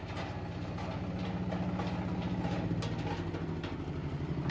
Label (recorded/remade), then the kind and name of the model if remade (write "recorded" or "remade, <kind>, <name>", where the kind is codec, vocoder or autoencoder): recorded